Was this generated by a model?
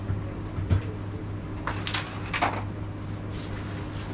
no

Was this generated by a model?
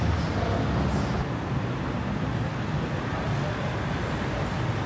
no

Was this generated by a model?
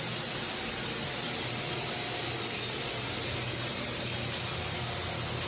no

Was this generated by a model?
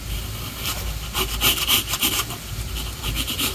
no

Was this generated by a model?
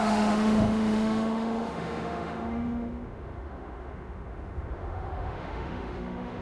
yes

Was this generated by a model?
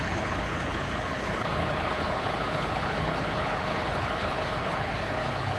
yes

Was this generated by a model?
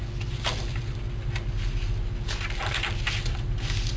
no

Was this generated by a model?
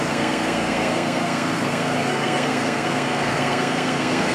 yes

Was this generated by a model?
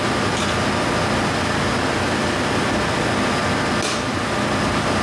no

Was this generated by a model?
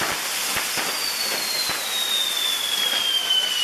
no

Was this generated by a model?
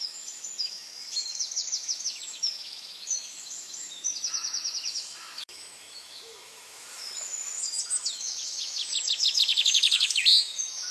yes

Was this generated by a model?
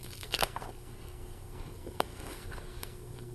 yes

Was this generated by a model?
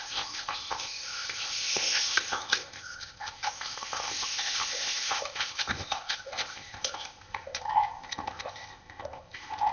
yes